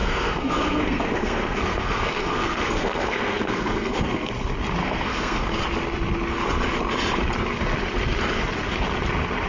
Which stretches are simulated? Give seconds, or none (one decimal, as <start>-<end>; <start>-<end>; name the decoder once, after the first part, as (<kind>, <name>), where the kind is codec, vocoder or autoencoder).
0.0-4.3 (codec, SNAC); 4.8-5.6